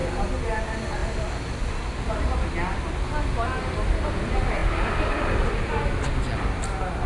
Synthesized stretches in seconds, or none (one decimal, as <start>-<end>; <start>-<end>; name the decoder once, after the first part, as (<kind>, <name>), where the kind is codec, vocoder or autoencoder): none